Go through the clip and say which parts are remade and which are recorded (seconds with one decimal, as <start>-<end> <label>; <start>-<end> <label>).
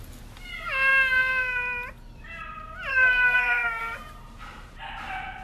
0.0-2.9 recorded; 2.9-3.8 remade; 3.8-5.4 recorded